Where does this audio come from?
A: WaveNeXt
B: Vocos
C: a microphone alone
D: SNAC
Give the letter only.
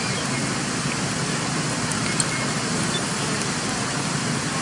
C